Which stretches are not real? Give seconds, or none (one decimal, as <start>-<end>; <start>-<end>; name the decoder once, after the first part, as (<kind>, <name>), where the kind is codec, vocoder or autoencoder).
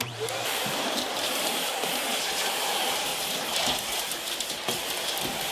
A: 0.0-3.1 (vocoder, BigVGAN v2); 4.5-5.5